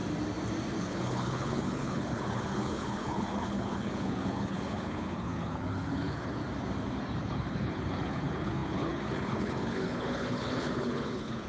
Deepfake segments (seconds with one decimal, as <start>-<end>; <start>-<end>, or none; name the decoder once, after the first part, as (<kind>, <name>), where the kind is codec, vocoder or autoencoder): 0.8-6.4 (codec, HILCodec); 7.2-11.5

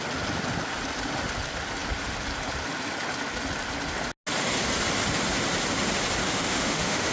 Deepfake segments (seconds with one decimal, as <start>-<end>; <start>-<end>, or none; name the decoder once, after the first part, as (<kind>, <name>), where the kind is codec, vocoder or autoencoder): 6.2-7.1 (autoencoder, DAC-VAE)